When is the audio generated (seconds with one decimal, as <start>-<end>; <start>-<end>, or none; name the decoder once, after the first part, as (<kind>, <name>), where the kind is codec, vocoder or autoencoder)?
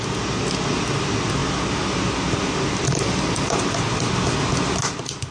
none